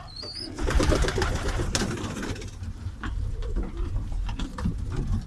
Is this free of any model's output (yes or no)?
yes